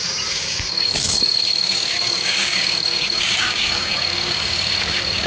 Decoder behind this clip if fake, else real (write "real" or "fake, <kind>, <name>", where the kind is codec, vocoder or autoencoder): fake, codec, DAC